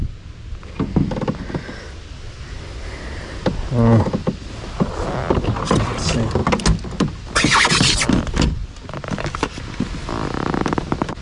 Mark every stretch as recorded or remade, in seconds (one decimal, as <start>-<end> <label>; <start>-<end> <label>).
0.0-11.2 recorded